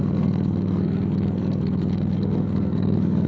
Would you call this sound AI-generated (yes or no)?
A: yes